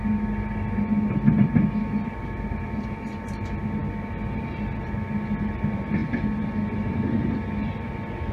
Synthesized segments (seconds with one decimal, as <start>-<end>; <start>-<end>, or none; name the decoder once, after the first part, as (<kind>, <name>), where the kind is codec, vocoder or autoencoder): none